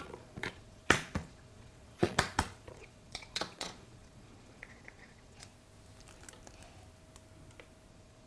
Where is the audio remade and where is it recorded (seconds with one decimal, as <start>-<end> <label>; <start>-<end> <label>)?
0.0-5.5 remade; 5.5-7.9 recorded; 7.9-8.3 remade